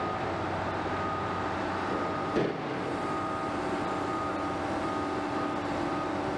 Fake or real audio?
real